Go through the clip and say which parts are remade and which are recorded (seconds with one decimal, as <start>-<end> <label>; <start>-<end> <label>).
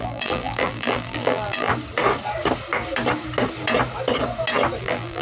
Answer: 0.0-1.7 remade; 1.7-4.8 recorded; 4.8-5.2 remade